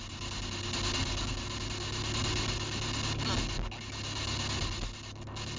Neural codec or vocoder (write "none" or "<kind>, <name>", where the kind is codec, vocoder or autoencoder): none